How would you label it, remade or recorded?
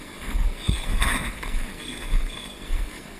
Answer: remade